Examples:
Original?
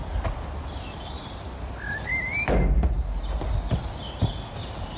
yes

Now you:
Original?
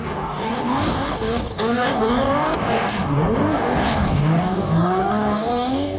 no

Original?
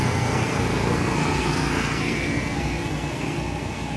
no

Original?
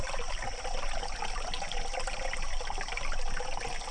yes